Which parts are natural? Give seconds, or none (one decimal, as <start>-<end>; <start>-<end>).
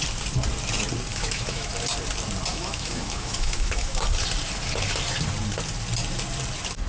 0.0-1.1; 1.7-2.5; 4.0-6.9